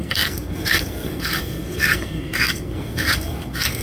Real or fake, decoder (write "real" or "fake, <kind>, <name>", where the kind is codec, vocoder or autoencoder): fake, codec, SNAC